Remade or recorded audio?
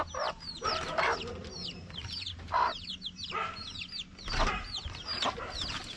remade